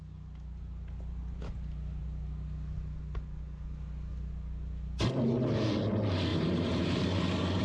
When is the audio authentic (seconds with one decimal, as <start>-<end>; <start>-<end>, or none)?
0.0-6.3